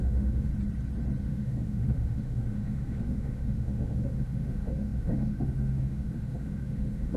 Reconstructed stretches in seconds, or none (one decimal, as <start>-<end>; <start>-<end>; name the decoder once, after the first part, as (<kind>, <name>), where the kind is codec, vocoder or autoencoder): 0.0-0.5 (autoencoder, DAC-VAE); 1.2-7.2